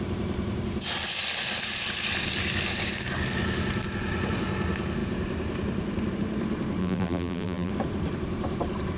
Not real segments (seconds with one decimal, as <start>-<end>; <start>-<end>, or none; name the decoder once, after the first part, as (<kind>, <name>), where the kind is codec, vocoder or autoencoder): 6.8-7.7 (vocoder, BigVGAN v2)